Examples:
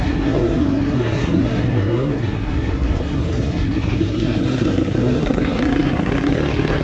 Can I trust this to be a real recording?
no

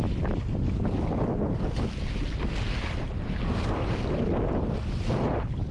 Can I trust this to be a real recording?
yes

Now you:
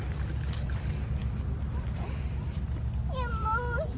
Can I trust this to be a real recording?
yes